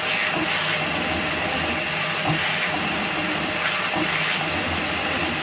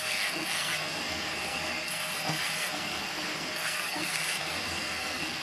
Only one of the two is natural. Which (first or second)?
first